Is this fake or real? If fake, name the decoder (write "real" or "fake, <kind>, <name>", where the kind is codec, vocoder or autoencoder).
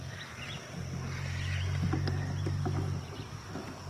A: real